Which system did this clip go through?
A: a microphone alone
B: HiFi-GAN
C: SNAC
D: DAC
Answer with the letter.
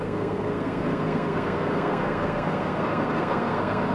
C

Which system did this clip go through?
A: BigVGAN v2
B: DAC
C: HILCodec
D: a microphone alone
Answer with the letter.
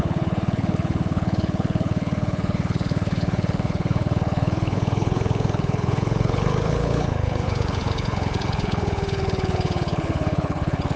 C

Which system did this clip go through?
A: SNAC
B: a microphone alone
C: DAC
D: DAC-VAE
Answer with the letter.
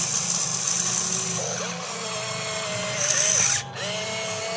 B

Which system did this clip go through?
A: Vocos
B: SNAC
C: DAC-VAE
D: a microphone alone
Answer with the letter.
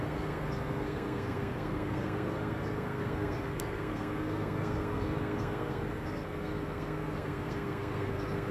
B